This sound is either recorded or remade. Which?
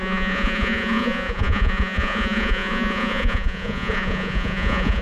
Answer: remade